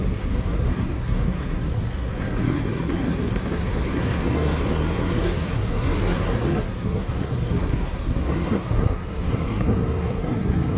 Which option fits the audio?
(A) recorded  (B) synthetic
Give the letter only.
B